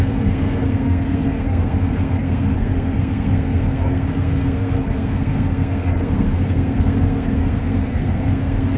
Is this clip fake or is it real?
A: fake